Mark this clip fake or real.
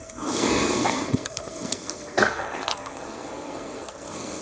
fake